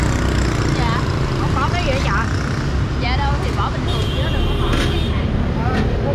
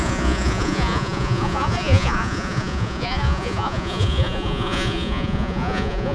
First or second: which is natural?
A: first